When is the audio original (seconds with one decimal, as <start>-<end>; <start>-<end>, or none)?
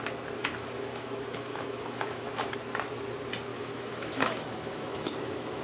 0.0-0.4; 2.3-3.5